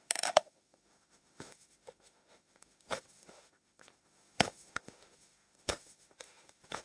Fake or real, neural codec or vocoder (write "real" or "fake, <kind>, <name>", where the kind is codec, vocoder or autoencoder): fake, autoencoder, DAC-VAE